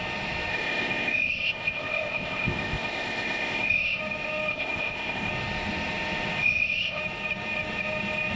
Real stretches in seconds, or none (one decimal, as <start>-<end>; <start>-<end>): 0.0-0.5; 4.0-4.5; 5.3-6.4; 7.0-8.3